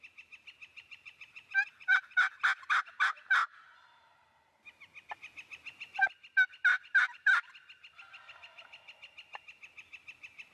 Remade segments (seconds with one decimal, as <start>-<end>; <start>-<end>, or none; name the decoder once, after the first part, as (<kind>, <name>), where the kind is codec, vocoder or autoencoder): 0.7-2.3 (vocoder, BigVGAN v2); 6.7-7.5